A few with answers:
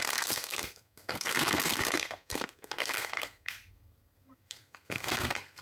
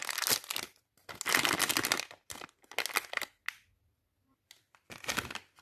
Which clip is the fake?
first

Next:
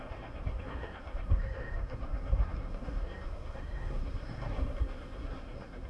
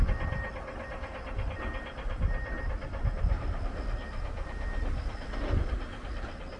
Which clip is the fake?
first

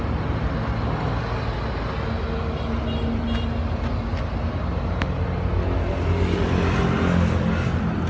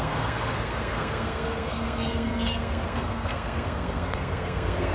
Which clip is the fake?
second